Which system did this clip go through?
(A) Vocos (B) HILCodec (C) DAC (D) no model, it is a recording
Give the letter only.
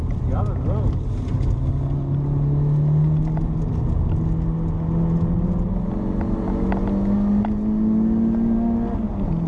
D